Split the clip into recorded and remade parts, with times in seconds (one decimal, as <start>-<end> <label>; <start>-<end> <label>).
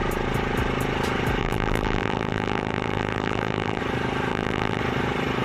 0.0-1.4 recorded; 1.4-3.8 remade; 3.8-4.3 recorded; 4.3-4.8 remade; 4.8-5.4 recorded